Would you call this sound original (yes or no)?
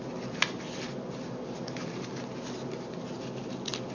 yes